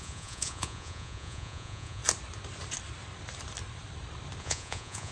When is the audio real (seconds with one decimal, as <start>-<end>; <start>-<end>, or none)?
2.0-4.4